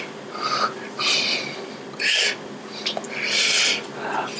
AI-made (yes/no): no